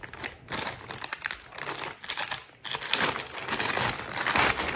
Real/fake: fake